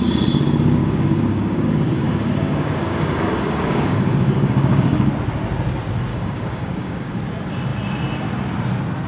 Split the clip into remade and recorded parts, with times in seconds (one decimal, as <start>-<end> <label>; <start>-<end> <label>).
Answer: 0.0-0.8 recorded; 0.8-5.1 remade; 5.1-6.1 recorded; 6.1-7.2 remade; 7.2-9.1 recorded